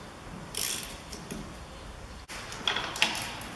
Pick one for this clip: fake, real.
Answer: fake